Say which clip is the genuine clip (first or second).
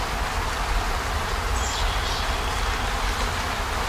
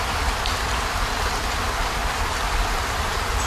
first